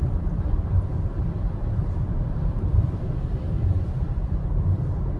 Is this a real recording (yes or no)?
no